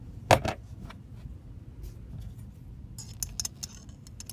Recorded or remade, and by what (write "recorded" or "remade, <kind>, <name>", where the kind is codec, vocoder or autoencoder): recorded